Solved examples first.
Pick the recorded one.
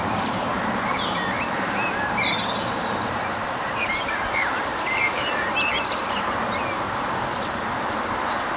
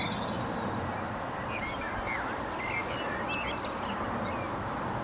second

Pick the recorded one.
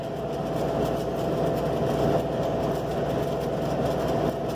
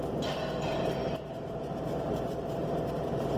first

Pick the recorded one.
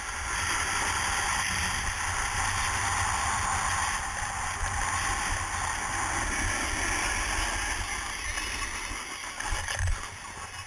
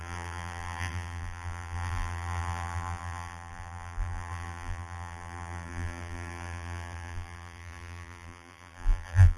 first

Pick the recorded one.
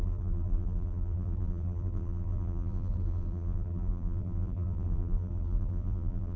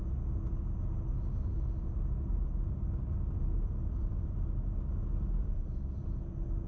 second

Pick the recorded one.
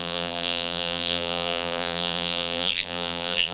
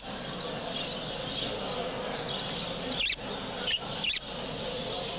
second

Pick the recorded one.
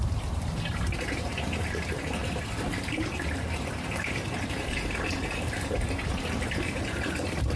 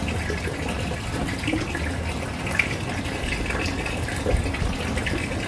second